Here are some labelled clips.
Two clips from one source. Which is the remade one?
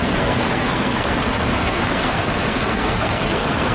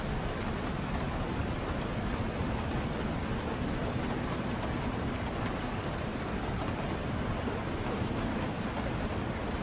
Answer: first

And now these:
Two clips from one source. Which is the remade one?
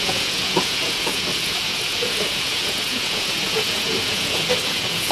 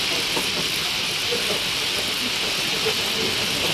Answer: first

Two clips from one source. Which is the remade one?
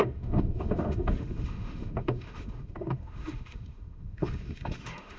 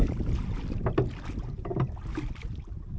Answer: first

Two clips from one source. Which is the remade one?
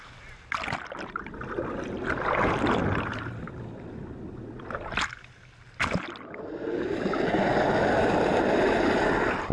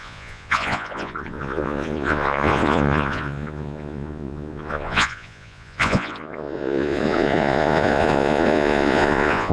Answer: second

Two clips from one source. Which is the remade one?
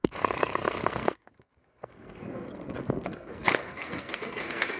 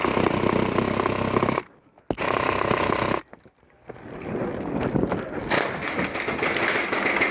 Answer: first